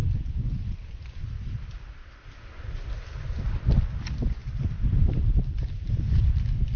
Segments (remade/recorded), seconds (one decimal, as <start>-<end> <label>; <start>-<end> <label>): 0.0-1.2 remade; 1.2-4.4 recorded; 4.4-6.2 remade; 6.2-6.8 recorded